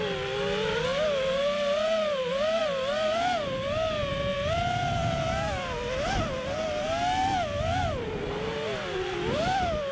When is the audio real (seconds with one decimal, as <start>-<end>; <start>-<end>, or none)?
0.0-9.9

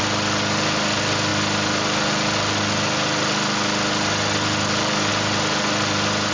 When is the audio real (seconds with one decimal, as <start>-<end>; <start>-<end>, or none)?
0.0-6.3

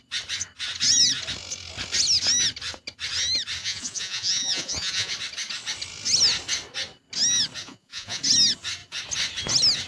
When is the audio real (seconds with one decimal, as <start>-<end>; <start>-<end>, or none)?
0.0-3.6; 5.1-7.6; 8.2-9.9

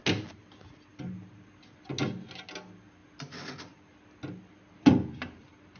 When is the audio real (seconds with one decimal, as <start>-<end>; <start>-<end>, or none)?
0.0-5.8

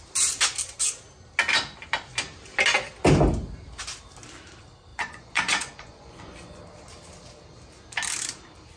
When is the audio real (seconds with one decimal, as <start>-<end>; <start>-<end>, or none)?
0.0-4.9; 6.6-8.8

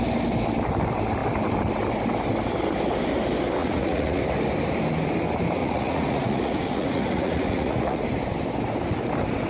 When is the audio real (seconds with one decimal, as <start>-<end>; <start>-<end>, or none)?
0.0-3.6; 4.2-5.6; 8.0-9.5

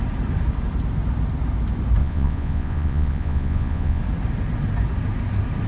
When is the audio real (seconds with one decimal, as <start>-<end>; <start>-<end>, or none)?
0.0-2.0; 4.0-5.7